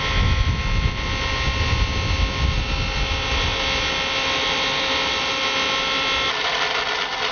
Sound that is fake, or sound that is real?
real